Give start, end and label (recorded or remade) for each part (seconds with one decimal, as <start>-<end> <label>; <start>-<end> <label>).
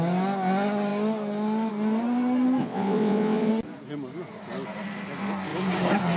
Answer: 0.0-2.6 recorded; 2.6-3.5 remade; 3.5-6.2 recorded